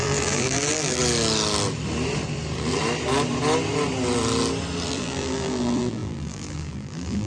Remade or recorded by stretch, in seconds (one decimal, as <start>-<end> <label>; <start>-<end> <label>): 0.0-1.0 remade; 1.0-4.9 recorded; 4.9-7.3 remade